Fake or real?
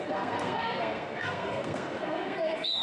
fake